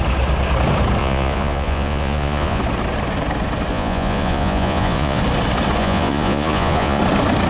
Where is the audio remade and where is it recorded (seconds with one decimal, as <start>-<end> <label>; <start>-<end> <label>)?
0.0-1.0 recorded; 1.0-2.6 remade; 2.6-3.7 recorded; 3.7-5.2 remade; 5.2-5.8 recorded; 5.8-7.0 remade; 7.0-7.5 recorded